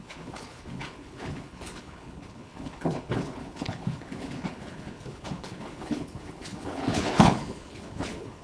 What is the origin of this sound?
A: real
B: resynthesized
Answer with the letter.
B